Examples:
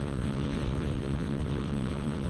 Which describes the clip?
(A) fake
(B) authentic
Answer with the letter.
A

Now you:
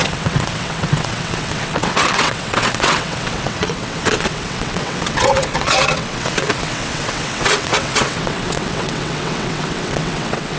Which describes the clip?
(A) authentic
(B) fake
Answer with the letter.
B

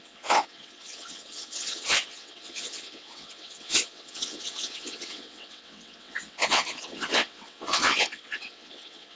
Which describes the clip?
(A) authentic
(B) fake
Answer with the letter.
B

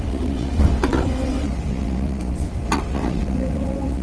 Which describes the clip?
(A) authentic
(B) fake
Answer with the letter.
B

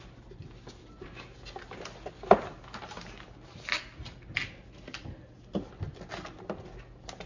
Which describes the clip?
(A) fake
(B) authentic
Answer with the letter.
B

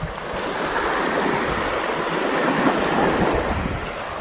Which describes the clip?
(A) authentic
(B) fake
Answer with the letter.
A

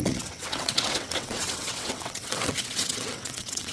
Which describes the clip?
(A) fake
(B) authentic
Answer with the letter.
A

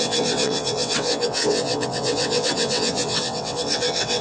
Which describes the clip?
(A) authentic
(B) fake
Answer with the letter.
B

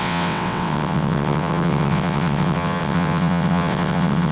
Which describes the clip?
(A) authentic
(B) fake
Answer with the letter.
B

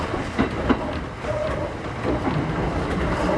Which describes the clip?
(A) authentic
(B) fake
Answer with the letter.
A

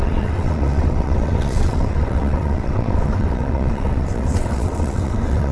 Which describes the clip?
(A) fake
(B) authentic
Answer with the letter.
A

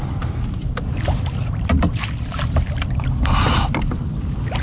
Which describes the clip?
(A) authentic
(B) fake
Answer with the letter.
A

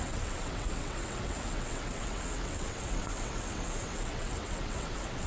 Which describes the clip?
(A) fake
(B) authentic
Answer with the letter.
A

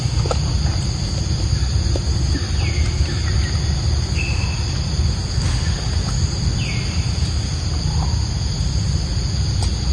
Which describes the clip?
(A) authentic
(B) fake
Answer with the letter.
A